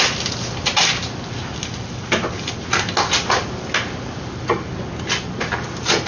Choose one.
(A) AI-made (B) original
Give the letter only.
B